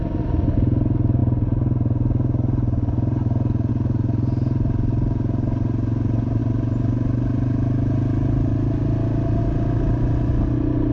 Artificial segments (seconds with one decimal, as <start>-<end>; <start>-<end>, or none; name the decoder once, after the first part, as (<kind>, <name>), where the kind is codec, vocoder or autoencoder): none